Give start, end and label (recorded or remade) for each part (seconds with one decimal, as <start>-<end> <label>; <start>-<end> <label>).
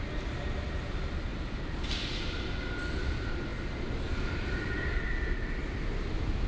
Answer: 0.0-6.5 recorded